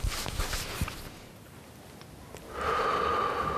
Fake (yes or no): no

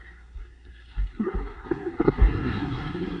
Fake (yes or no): yes